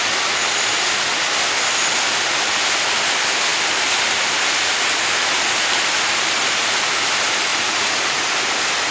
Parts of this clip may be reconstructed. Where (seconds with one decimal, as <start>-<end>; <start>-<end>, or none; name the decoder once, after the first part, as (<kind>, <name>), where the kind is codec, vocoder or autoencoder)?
0.7-1.3 (vocoder, Vocos); 7.5-8.1

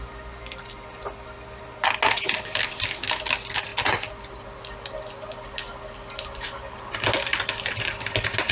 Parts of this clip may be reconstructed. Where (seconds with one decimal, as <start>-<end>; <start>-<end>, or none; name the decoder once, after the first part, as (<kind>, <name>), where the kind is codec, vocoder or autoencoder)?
none

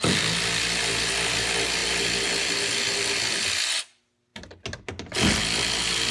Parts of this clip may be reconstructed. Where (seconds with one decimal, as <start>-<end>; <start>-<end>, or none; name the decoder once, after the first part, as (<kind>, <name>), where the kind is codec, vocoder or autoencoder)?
none

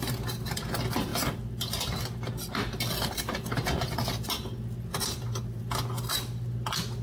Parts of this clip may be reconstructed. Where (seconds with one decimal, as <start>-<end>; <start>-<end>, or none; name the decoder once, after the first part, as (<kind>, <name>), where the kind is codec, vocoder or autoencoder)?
4.9-5.6 (vocoder, BigVGAN v2)

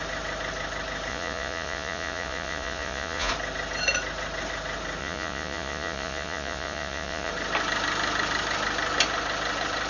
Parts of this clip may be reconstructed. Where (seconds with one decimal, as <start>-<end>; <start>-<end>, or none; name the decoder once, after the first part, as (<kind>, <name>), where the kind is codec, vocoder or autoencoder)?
1.1-3.3 (vocoder, Vocos); 5.0-7.3

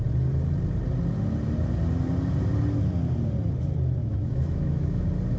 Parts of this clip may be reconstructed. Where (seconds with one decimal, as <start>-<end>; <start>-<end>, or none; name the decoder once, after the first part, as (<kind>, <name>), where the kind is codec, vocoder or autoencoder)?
4.0-5.0 (autoencoder, DAC-VAE)

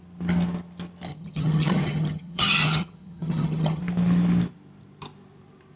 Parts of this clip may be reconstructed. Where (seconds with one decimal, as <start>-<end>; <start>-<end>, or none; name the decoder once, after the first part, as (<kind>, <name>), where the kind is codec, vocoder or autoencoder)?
1.1-3.8 (vocoder, HiFi-GAN)